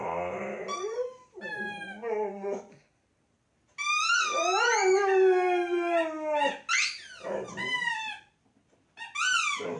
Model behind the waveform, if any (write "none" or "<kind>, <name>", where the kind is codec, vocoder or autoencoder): none